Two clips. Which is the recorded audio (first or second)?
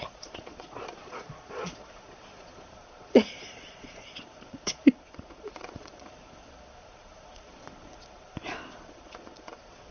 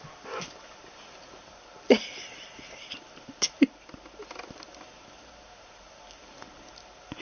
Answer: second